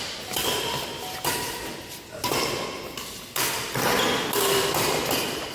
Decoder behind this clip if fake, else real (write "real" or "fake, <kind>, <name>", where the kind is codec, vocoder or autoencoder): real